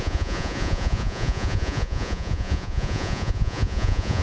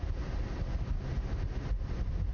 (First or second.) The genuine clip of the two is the second